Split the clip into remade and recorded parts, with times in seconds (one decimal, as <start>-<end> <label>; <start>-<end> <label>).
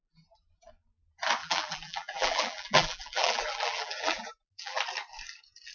0.0-1.4 recorded; 1.4-4.8 remade; 4.8-5.7 recorded